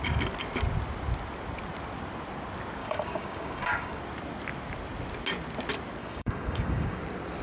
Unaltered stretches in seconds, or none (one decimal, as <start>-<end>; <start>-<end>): 0.0-2.8; 4.0-6.0; 7.0-7.4